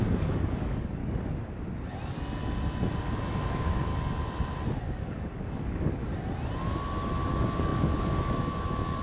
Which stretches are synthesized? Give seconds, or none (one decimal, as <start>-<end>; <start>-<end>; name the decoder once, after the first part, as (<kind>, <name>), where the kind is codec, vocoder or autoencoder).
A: 0.0-1.0 (codec, DAC); 3.5-3.9; 4.8-6.1; 7.3-9.0